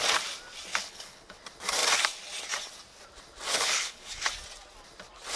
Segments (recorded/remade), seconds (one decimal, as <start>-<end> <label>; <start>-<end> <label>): 0.0-0.7 recorded; 0.7-1.4 remade; 1.4-3.5 recorded; 3.5-4.3 remade; 4.3-5.4 recorded